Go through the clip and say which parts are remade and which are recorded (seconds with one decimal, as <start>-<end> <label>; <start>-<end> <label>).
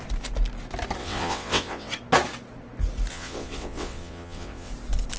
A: 0.0-1.0 recorded; 1.0-1.9 remade; 1.9-3.1 recorded; 3.1-4.7 remade; 4.7-5.2 recorded